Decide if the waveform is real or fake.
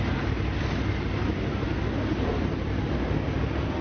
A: real